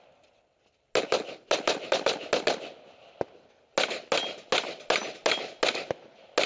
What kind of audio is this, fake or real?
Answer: real